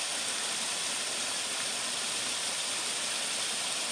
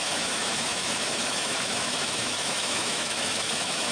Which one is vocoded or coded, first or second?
second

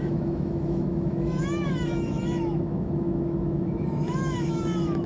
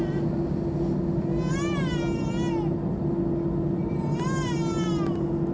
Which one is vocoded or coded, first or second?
first